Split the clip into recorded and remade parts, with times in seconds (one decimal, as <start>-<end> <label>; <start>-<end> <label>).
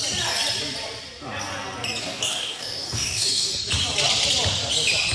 0.0-2.0 recorded; 2.0-3.6 remade; 3.6-5.1 recorded